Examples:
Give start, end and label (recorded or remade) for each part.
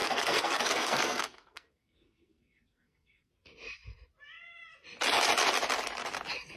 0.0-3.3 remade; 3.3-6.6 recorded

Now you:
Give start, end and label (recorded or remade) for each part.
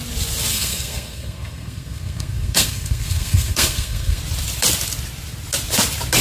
0.0-0.5 recorded; 0.5-4.2 remade; 4.2-6.2 recorded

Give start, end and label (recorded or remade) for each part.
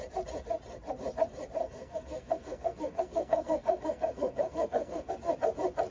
0.0-1.6 recorded; 1.6-5.1 remade; 5.1-5.9 recorded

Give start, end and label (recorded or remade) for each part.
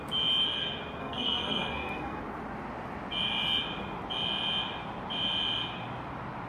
0.0-1.0 recorded; 1.0-2.2 remade; 2.2-6.5 recorded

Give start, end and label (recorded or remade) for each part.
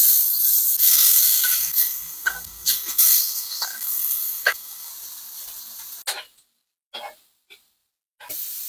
0.0-0.8 recorded; 0.8-4.9 remade; 4.9-8.7 recorded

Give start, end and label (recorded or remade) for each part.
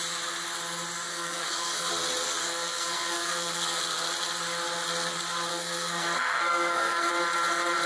0.0-1.1 recorded; 1.1-1.9 remade; 1.9-2.4 recorded; 2.4-3.8 remade; 3.8-5.5 recorded; 5.5-7.1 remade; 7.1-7.9 recorded